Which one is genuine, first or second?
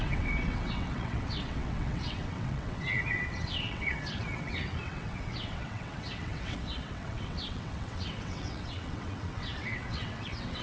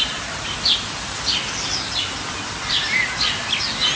second